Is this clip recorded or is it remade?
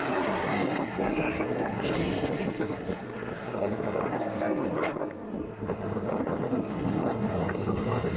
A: remade